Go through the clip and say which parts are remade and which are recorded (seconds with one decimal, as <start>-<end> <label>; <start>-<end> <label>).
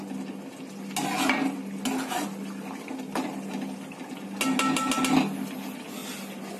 0.0-6.6 recorded